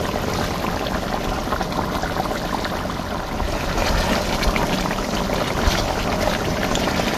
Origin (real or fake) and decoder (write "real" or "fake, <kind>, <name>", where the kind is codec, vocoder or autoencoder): real